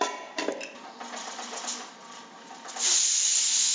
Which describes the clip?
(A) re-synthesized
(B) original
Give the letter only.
B